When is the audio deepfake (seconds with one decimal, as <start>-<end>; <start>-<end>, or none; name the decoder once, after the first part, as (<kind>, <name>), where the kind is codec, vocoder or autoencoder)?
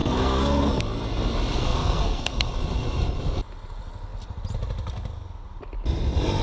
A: 0.0-0.8 (codec, SNAC); 1.6-2.5